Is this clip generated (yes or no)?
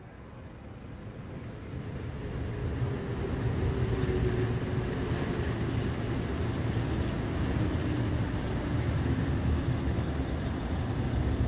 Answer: no